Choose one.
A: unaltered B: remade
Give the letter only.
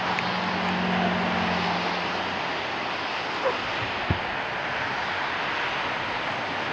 A